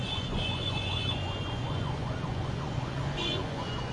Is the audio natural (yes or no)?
no